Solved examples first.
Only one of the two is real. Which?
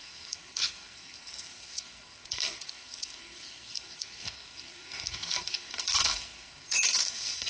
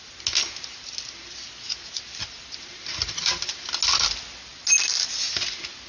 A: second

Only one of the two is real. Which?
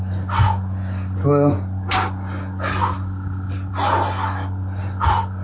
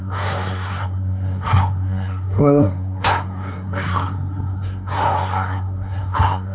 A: first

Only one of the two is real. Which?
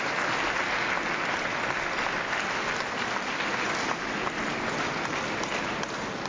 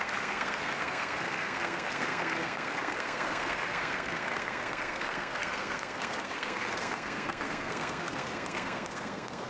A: first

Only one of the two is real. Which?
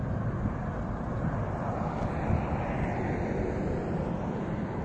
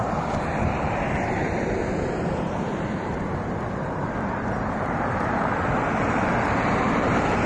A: first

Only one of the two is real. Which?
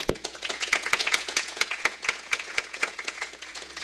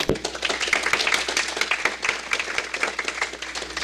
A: second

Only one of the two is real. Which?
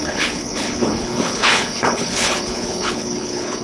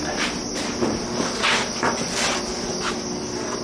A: second